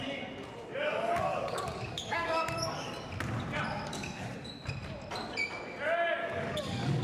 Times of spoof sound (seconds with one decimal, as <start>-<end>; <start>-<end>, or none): 1.3-3.1; 3.9-4.5; 6.2-7.0